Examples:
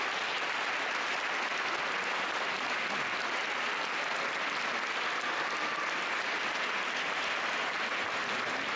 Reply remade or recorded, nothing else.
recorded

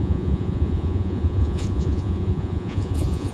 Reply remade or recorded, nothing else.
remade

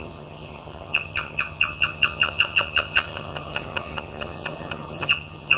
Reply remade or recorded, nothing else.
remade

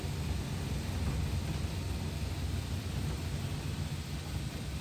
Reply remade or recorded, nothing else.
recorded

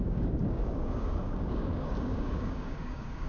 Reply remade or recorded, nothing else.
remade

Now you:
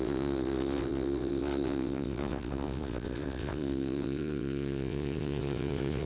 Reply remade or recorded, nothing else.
remade